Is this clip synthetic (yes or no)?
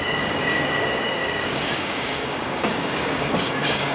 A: yes